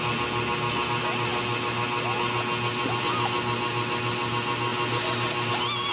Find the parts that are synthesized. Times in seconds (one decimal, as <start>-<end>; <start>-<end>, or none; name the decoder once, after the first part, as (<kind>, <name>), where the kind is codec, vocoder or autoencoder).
none